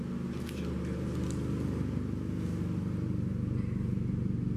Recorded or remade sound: recorded